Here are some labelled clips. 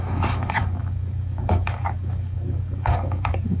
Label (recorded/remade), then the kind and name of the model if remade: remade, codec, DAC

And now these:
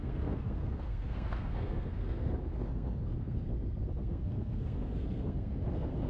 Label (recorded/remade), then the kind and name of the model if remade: remade, codec, SNAC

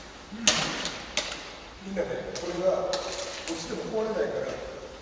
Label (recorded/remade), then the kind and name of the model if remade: recorded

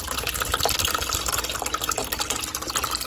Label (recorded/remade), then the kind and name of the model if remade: recorded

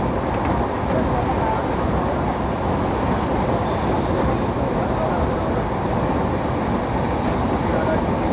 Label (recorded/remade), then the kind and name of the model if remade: recorded